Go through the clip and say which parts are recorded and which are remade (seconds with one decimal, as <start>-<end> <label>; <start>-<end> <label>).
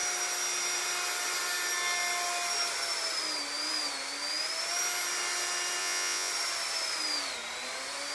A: 0.0-5.8 recorded; 5.8-6.3 remade; 6.3-8.1 recorded